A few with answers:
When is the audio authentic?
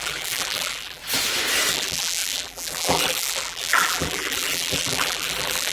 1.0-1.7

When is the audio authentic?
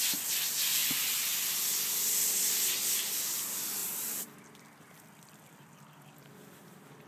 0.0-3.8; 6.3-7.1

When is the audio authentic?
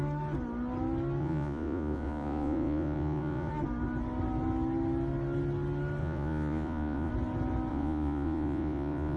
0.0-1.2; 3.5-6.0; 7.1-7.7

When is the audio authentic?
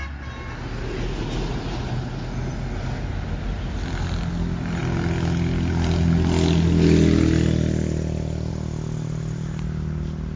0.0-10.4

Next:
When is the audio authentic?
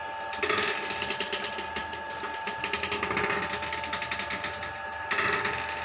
0.0-5.8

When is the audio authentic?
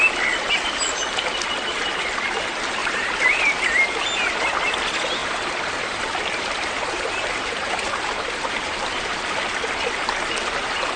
0.0-2.8; 3.8-5.2; 9.7-11.0